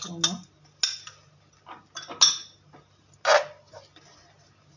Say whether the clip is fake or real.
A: real